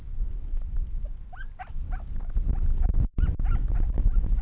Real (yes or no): yes